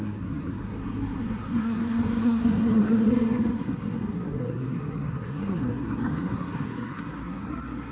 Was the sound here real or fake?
fake